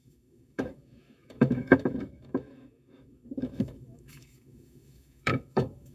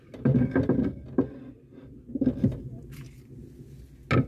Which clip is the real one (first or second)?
second